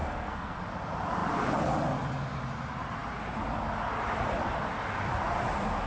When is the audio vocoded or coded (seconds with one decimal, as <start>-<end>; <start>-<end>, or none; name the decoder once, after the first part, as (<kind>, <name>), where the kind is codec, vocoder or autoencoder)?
0.0-0.6 (codec, SNAC)